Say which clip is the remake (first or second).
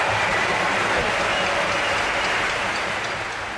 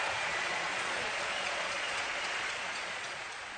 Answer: second